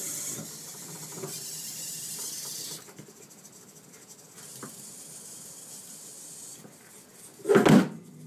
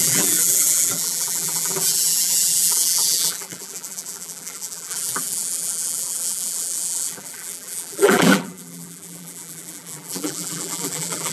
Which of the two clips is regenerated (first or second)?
second